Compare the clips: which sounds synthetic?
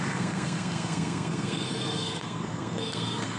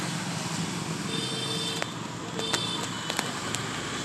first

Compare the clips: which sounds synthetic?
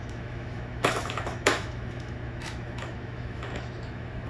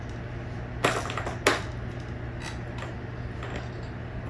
first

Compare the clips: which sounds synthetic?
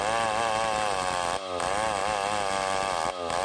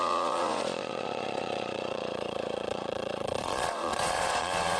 second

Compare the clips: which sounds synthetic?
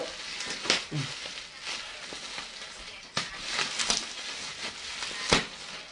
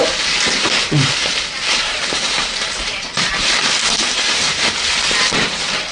second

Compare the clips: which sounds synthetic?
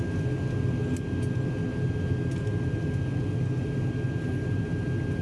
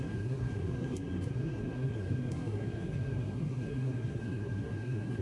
second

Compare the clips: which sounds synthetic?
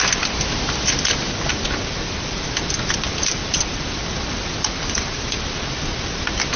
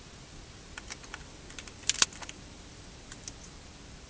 second